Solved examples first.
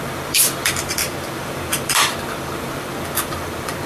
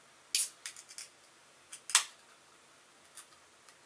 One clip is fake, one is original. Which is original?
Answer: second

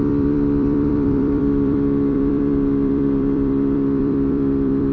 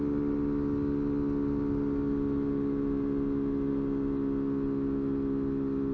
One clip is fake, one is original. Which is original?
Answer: second